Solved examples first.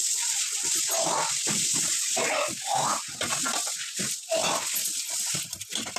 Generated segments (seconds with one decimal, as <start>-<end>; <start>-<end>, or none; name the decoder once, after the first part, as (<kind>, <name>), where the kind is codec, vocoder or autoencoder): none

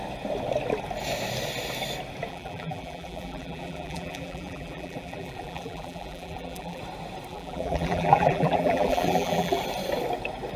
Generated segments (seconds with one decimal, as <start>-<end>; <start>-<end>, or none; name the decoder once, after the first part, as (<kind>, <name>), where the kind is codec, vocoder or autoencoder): 2.3-6.8 (vocoder, BigVGAN v2); 7.3-9.6

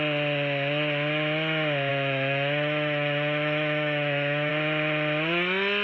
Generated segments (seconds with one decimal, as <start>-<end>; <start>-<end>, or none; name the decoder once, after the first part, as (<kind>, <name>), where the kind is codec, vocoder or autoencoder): 1.9-4.5 (autoencoder, DAC-VAE)

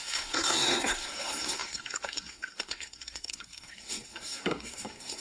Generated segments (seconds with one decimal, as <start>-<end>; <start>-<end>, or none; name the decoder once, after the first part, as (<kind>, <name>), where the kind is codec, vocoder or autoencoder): 0.0-5.2 (codec, SNAC)